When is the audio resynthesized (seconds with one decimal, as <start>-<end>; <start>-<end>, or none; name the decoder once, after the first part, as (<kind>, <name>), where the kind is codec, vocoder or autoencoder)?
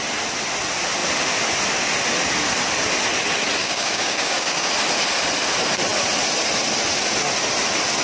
3.6-4.7 (codec, DAC)